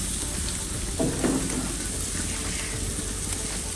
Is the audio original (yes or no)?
yes